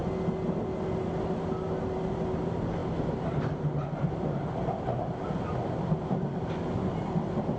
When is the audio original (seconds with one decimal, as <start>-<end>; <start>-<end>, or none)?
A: 0.0-7.6